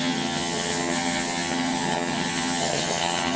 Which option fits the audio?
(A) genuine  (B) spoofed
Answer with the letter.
B